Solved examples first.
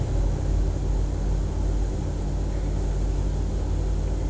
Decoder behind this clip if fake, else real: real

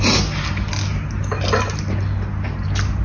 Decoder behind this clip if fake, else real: real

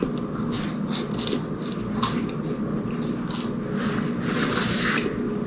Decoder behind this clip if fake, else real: real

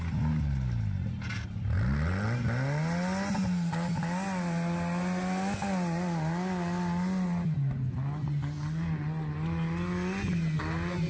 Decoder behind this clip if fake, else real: real